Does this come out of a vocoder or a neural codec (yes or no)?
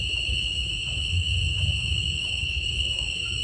yes